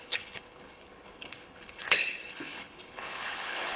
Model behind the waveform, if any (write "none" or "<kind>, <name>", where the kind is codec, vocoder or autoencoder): codec, HILCodec